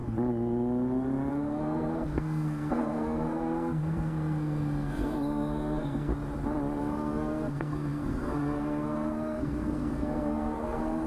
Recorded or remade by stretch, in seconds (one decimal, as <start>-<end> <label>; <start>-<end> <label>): 0.0-1.3 recorded; 1.3-6.1 remade; 6.1-6.8 recorded; 6.8-11.1 remade

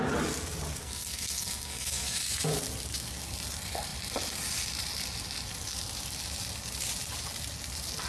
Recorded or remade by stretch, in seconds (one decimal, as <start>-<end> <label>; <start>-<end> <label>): 0.0-0.8 recorded; 0.8-2.2 remade; 2.2-8.1 recorded

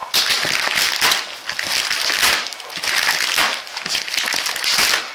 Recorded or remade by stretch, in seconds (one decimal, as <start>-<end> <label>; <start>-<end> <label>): 0.0-5.1 recorded

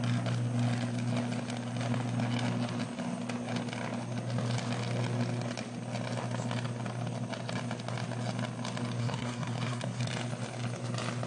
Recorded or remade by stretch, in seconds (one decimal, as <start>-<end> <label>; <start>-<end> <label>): 0.0-9.0 recorded; 9.0-10.0 remade; 10.0-11.3 recorded

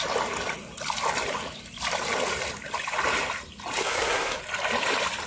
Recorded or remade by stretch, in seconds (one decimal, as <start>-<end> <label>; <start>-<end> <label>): 0.0-3.8 recorded; 3.8-4.4 remade; 4.4-5.3 recorded

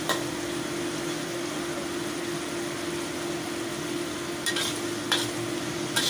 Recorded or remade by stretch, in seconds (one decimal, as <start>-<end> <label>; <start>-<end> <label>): 0.0-6.1 recorded

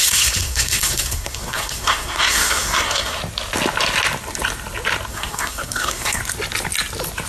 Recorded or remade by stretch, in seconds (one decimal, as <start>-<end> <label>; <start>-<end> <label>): 0.0-3.2 remade; 3.2-5.1 recorded; 5.1-6.2 remade; 6.2-7.3 recorded

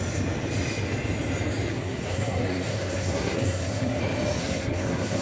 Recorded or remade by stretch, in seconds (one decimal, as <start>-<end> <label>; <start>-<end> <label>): 0.0-1.7 recorded; 1.7-4.0 remade; 4.0-4.4 recorded; 4.4-5.2 remade